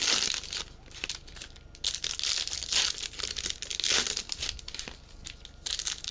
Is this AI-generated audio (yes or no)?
no